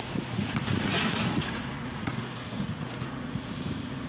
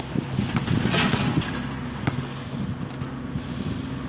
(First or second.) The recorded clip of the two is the second